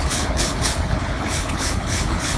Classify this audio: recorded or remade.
remade